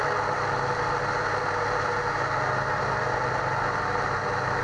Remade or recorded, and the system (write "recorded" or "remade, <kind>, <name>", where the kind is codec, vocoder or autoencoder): recorded